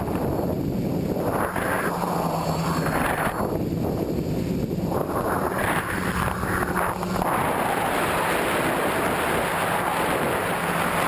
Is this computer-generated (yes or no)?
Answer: no